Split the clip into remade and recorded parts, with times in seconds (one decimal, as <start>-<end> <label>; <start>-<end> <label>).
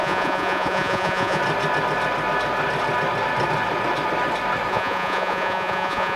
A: 0.0-1.4 remade; 1.4-4.7 recorded; 4.7-6.2 remade